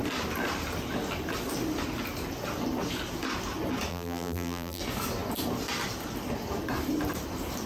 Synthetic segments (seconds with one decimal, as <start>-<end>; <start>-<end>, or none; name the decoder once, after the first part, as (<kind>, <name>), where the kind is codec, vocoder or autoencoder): 3.9-4.8 (vocoder, BigVGAN v2)